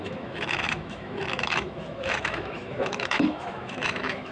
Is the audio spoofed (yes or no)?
yes